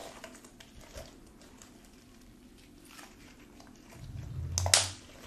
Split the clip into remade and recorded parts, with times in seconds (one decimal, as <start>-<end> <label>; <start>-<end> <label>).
0.0-3.2 remade; 3.2-5.3 recorded